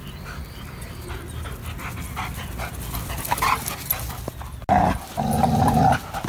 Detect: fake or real real